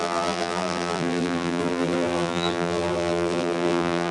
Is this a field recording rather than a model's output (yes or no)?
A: no